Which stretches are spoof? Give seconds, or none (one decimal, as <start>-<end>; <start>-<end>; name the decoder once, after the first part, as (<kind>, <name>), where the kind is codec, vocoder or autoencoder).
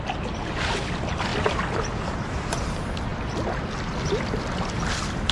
none